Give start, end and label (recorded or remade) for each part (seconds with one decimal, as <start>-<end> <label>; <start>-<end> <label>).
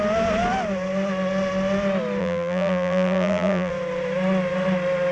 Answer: 0.0-2.2 recorded; 2.2-3.7 remade; 3.7-5.1 recorded